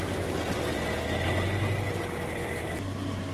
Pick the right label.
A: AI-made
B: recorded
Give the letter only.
B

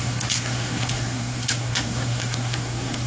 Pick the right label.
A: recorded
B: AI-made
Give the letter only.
B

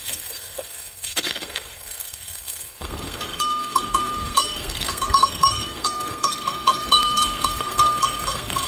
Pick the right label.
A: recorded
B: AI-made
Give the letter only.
B